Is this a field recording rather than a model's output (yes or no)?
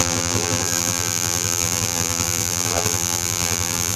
no